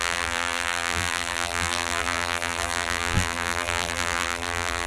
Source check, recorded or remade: remade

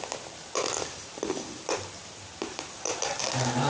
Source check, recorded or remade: remade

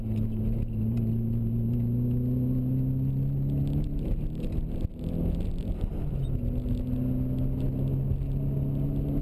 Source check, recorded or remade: recorded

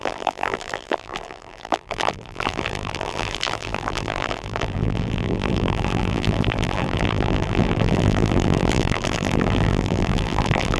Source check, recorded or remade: remade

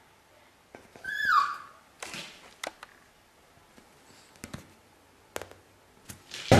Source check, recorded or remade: recorded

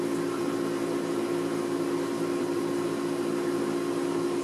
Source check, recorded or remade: recorded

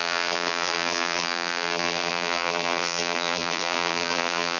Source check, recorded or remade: remade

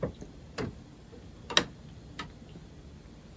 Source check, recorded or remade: recorded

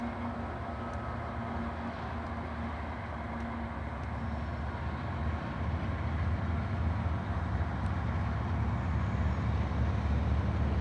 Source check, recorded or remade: recorded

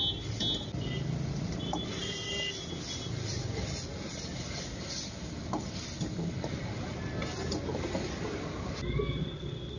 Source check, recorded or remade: recorded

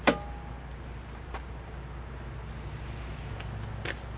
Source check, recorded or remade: recorded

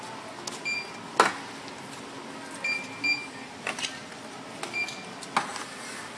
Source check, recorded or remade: recorded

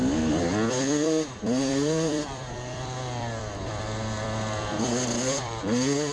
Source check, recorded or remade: remade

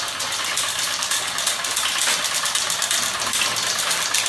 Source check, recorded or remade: recorded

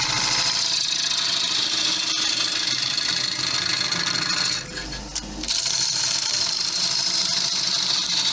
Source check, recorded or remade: recorded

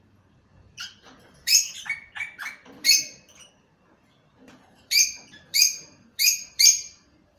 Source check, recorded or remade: remade